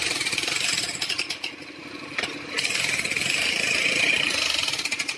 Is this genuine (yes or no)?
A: yes